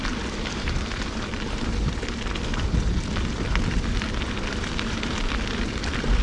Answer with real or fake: fake